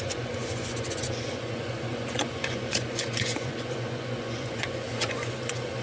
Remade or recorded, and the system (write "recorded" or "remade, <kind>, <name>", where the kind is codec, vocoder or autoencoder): remade, vocoder, Vocos